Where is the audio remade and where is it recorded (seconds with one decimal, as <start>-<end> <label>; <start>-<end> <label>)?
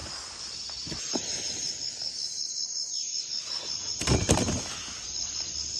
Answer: 0.0-5.8 recorded